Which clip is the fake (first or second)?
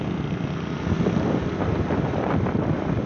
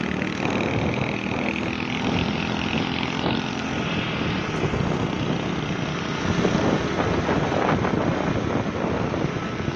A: first